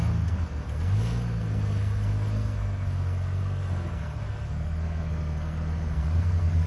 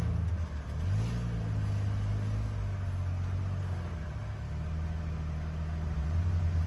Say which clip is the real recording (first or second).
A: second